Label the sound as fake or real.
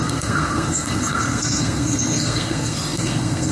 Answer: fake